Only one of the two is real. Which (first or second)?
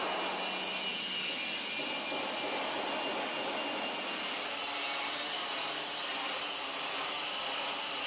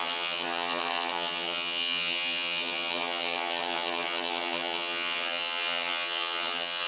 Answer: first